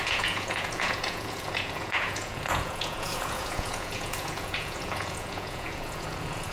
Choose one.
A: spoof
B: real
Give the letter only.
A